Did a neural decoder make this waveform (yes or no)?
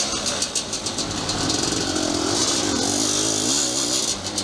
no